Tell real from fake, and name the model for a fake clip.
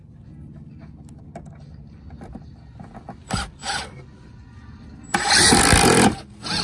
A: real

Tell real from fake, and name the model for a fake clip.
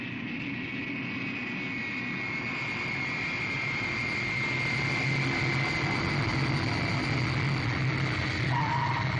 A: real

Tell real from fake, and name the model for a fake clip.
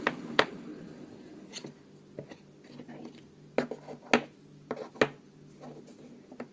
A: real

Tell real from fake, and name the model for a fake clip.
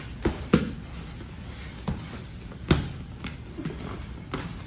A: real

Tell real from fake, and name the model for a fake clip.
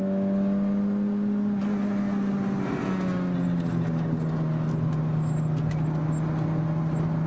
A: real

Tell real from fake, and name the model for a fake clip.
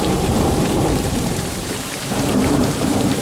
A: fake, vocoder, BigVGAN v2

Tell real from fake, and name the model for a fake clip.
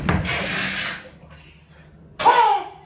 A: real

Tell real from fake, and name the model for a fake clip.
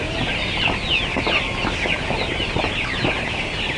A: real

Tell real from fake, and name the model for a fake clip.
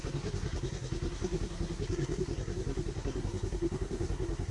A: fake, codec, SNAC